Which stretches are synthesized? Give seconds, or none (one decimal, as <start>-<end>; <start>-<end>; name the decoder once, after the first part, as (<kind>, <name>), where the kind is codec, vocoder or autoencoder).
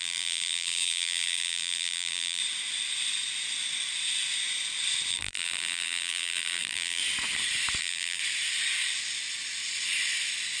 0.0-2.4 (vocoder, BigVGAN v2); 5.1-7.0; 7.8-8.2